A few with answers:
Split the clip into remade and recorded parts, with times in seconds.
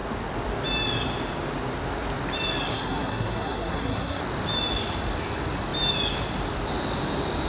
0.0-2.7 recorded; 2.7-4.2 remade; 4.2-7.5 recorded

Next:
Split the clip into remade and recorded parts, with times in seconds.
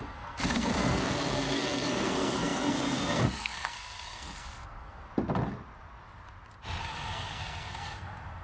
0.0-5.1 remade; 5.1-6.8 recorded; 6.8-8.4 remade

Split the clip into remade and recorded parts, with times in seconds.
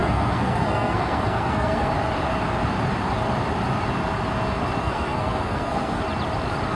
0.0-1.9 remade; 1.9-4.8 recorded; 4.8-6.0 remade; 6.0-6.8 recorded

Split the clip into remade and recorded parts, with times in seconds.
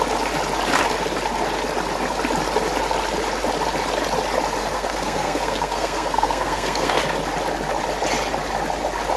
0.0-4.6 recorded; 4.6-7.0 remade; 7.0-9.2 recorded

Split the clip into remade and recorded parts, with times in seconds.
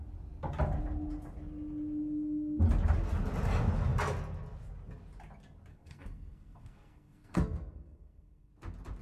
0.0-5.7 recorded; 5.7-8.5 remade; 8.5-9.0 recorded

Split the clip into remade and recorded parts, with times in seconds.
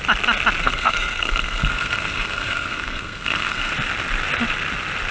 0.0-0.6 recorded; 0.6-3.7 remade; 3.7-5.1 recorded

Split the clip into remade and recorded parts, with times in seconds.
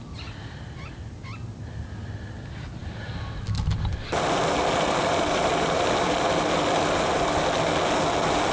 0.0-8.5 recorded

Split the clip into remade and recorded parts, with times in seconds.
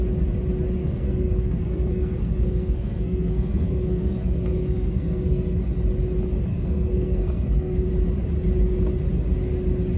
0.0-0.8 recorded; 0.8-5.6 remade; 5.6-6.5 recorded; 6.5-7.9 remade; 7.9-10.0 recorded